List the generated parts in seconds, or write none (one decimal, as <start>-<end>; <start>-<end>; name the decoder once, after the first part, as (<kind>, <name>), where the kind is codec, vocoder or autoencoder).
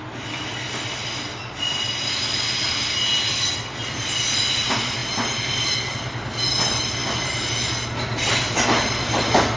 none